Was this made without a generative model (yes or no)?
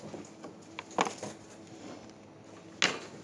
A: yes